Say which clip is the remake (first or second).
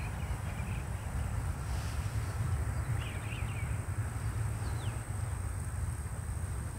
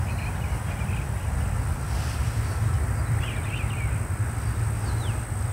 first